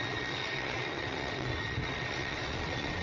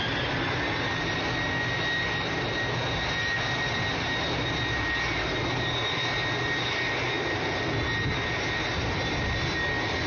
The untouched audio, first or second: second